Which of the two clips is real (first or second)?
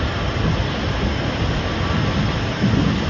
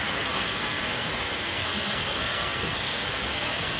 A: first